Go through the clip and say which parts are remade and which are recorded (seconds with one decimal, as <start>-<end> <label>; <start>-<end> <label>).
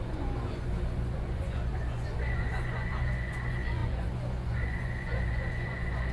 0.0-6.1 remade